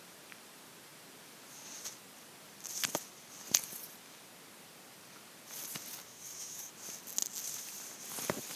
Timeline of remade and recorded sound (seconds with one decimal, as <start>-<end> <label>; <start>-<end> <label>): 0.0-6.0 recorded; 6.0-6.7 remade; 6.7-8.6 recorded